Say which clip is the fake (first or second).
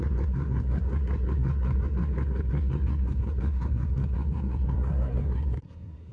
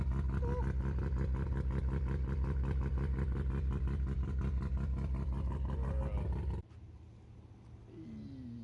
first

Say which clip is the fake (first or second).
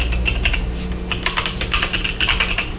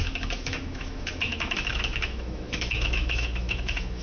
second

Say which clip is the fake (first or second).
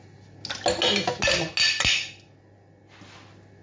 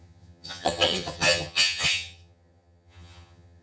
second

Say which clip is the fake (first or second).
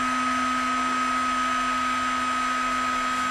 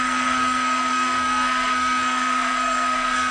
second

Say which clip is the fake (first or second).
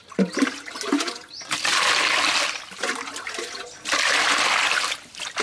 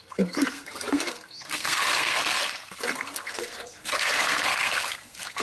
second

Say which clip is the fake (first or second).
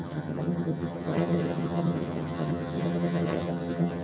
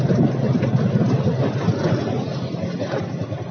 first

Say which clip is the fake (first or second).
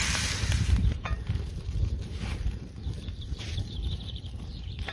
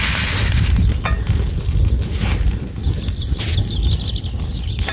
first